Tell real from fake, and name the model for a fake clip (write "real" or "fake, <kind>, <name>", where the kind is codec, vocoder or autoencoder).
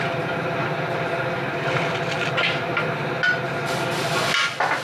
real